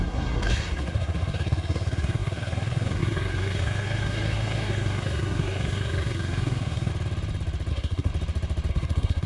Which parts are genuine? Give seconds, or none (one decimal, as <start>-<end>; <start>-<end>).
6.9-7.7; 8.1-8.7